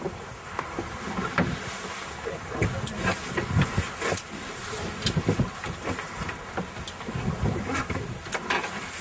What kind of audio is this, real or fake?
real